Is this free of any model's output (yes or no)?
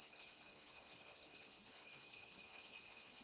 no